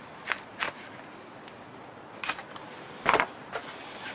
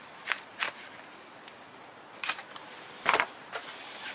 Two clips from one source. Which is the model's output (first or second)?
second